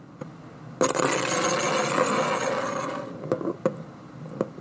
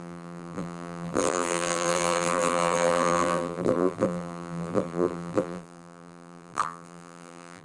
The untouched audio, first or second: first